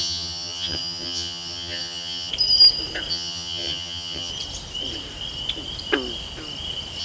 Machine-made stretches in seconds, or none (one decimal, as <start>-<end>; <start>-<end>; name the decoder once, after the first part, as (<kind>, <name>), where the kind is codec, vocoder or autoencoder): 0.0-2.3 (vocoder, HiFi-GAN); 3.1-4.3

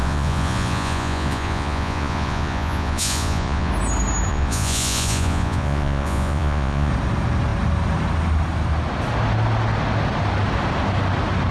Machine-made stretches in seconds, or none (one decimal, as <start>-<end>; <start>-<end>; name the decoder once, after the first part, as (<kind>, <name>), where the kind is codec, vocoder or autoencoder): 0.0-3.7 (vocoder, Vocos); 4.3-6.9